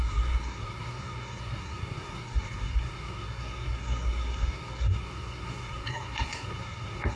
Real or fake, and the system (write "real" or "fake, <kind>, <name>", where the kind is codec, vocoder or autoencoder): fake, codec, SNAC